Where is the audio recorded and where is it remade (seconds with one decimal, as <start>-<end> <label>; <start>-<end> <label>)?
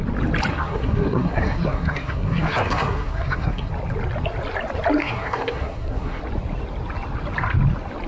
0.0-0.5 recorded; 0.5-3.7 remade; 3.7-5.0 recorded; 5.0-6.2 remade; 6.2-8.1 recorded